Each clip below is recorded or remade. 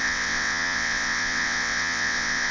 remade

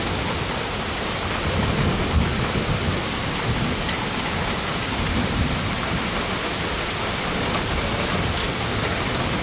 recorded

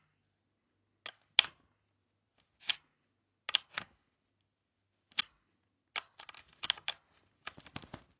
recorded